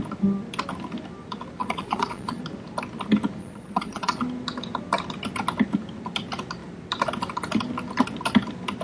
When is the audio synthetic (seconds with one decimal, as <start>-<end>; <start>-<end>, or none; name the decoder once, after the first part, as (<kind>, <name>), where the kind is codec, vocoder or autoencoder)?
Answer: 1.6-2.4 (vocoder, Vocos); 3.4-4.2